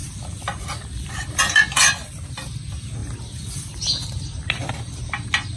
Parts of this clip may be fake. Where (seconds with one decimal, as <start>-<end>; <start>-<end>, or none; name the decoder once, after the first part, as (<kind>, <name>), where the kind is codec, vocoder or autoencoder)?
none